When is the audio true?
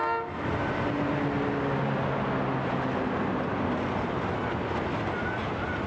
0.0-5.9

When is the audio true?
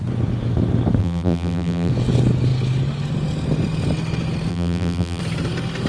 0.0-1.0; 1.9-4.5; 5.2-5.9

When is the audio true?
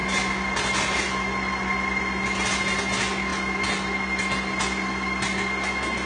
0.0-6.1